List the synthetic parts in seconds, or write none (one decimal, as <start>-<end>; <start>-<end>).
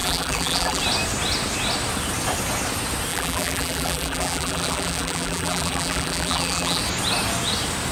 0.0-0.8; 3.1-6.8